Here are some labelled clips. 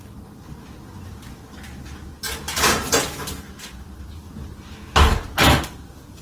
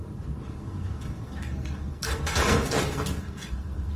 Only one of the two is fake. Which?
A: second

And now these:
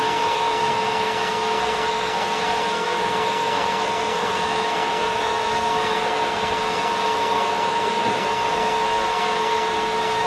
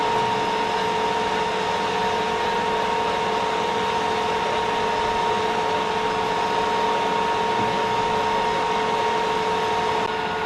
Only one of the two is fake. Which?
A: first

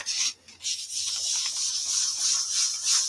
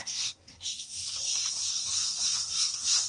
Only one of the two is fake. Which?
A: second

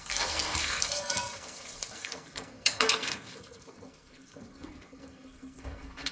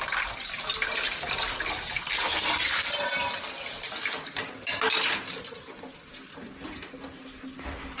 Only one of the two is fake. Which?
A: first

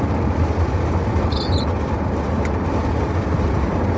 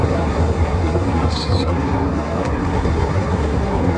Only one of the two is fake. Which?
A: second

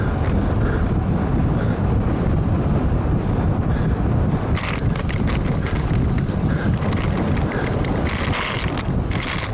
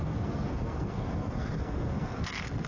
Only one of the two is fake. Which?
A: second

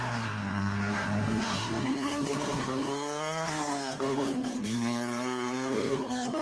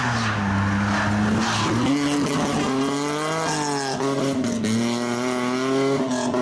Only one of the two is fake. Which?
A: first